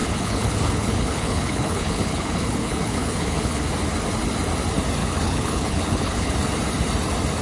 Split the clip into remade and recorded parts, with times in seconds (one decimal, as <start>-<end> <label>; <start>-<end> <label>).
0.0-3.7 remade; 3.7-5.0 recorded; 5.0-6.3 remade; 6.3-7.4 recorded